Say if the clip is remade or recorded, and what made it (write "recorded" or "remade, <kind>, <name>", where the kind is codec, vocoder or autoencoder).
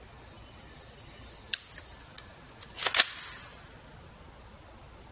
recorded